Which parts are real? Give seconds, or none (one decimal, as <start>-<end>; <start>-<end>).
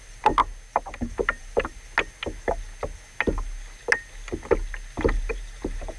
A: 0.4-1.1; 1.7-5.3